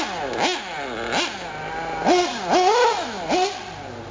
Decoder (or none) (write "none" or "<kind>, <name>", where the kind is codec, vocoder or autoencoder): none